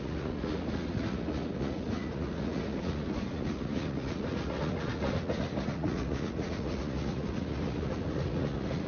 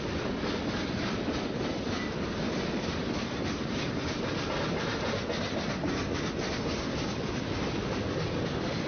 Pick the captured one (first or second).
second